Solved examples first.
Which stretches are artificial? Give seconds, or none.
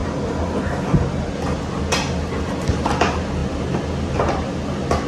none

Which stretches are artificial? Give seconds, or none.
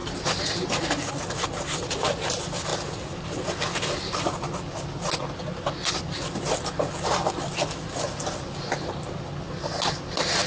none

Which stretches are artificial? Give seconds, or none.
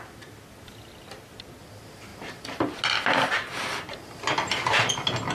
none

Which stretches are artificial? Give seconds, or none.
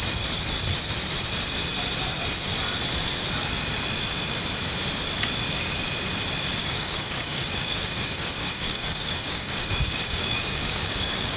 6.6-11.4 (codec, DAC)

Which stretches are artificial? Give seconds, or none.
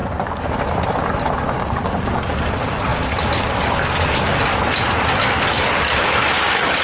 0.0-1.3 (vocoder, BigVGAN v2)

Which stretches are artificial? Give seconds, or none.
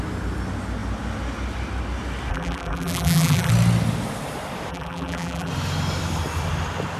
2.3-3.5 (vocoder, BigVGAN v2); 4.7-5.5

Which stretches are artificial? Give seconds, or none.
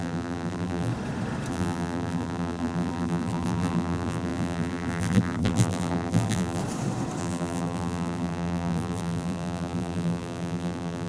0.0-0.9 (vocoder, BigVGAN v2); 1.5-6.6; 7.2-11.1